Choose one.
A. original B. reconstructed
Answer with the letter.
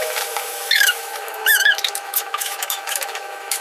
B